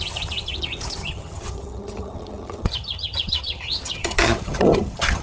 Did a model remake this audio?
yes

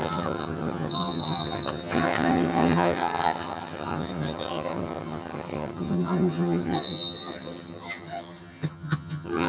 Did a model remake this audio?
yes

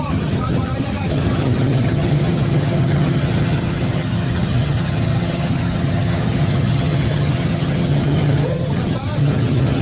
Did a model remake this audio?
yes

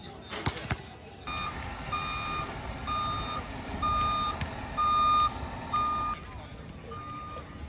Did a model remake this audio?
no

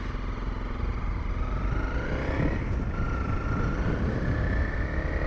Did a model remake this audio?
no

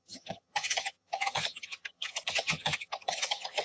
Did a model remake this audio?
yes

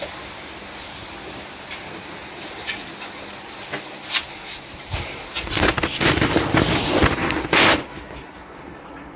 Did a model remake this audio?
no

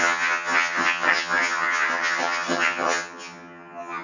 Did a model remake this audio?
yes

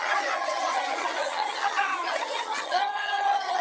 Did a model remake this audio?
yes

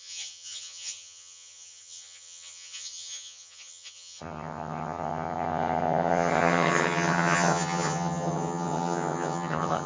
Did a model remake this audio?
yes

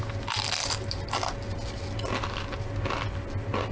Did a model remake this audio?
no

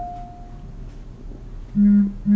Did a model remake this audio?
no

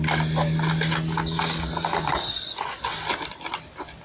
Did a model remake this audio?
no